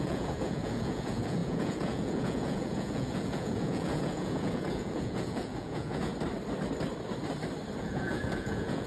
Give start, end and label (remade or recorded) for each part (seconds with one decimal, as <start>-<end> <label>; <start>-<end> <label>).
0.0-6.1 remade; 6.1-7.8 recorded; 7.8-8.9 remade